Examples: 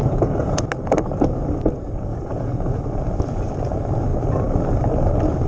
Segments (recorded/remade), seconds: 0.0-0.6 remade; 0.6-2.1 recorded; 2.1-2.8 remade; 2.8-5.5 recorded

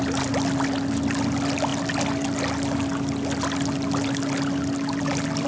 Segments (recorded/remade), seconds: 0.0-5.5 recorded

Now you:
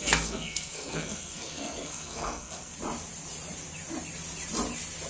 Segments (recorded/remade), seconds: 0.0-2.7 remade; 2.7-5.1 recorded